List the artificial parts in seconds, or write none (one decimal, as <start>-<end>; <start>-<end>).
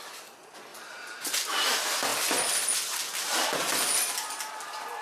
0.7-1.6